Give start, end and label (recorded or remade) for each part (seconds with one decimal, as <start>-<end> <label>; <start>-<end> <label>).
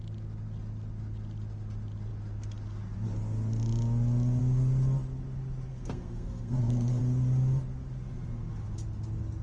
0.0-5.7 recorded; 5.7-7.0 remade; 7.0-9.4 recorded